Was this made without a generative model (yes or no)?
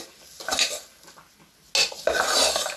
yes